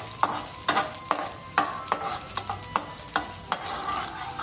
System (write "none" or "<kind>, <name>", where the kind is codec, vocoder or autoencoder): none